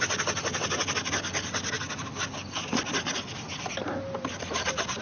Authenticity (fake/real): real